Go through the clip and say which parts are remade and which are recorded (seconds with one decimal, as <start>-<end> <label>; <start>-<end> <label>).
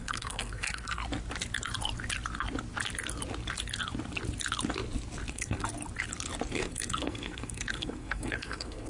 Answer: 0.0-1.0 remade; 1.0-5.3 recorded; 5.3-5.7 remade; 5.7-6.5 recorded; 6.5-8.9 remade